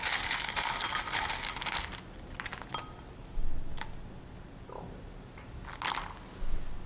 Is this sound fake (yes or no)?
no